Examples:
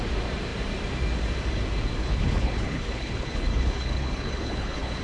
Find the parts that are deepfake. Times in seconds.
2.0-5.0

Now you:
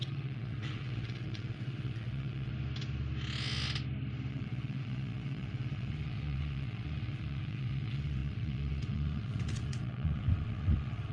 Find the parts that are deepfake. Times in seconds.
0.0-2.5; 4.3-11.1

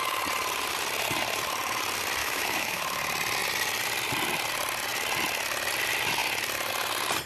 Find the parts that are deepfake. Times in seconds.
2.2-2.8

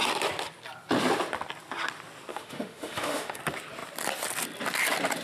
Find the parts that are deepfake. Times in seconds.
2.3-3.4

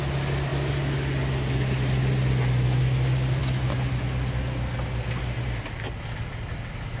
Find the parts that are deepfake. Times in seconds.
none

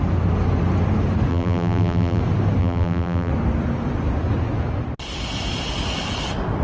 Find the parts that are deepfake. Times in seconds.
1.3-2.2; 2.6-3.3

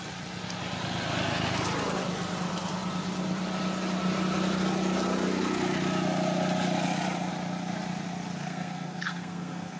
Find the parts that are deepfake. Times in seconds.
8.4-9.8

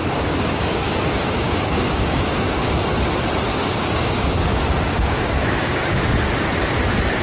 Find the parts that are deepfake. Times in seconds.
0.0-2.8; 3.5-6.0